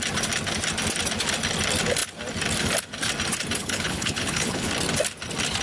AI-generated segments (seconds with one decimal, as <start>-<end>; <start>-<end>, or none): 3.6-4.7